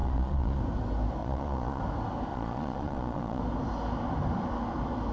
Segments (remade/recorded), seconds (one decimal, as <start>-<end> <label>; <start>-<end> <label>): 0.0-0.6 remade; 0.6-1.2 recorded; 1.2-1.8 remade; 1.8-2.3 recorded; 2.3-3.4 remade; 3.4-5.1 recorded